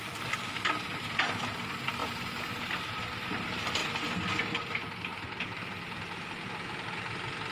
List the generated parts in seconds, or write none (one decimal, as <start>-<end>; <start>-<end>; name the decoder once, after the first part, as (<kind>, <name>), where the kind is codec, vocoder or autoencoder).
2.0-2.8 (vocoder, BigVGAN v2); 5.1-6.5